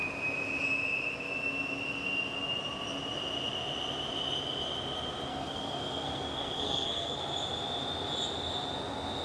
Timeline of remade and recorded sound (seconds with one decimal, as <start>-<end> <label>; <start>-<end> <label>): 0.0-5.3 recorded; 5.3-7.2 remade; 7.2-9.2 recorded